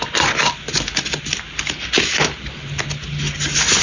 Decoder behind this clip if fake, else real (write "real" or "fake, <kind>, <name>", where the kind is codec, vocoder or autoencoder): real